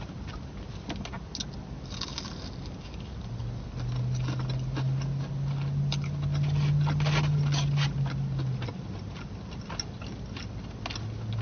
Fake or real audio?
real